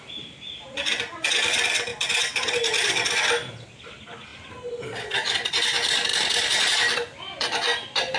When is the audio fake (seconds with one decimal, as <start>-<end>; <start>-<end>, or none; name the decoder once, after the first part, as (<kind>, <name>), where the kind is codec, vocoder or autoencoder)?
0.0-8.2 (vocoder, BigVGAN v2)